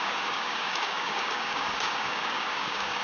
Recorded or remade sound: remade